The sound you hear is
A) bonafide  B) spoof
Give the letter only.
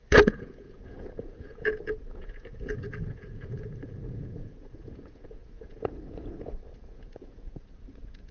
B